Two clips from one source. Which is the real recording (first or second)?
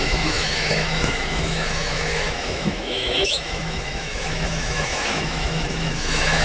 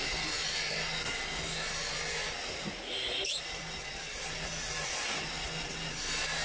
second